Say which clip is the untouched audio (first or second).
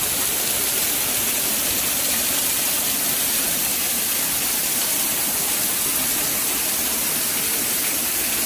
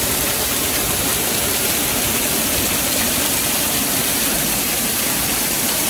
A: first